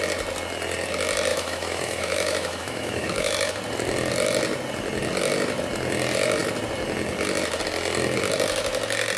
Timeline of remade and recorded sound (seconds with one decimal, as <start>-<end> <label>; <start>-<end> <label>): 0.0-1.3 recorded; 1.3-3.5 remade; 3.5-9.2 recorded